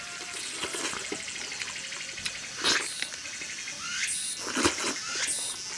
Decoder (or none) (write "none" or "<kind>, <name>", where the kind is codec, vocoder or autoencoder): none